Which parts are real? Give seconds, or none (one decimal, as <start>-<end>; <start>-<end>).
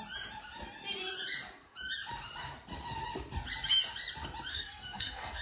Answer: 0.0-4.5